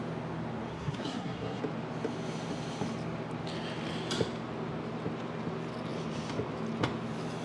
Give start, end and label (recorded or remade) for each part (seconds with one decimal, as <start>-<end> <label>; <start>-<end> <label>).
0.0-0.7 recorded; 0.7-1.6 remade; 1.6-7.4 recorded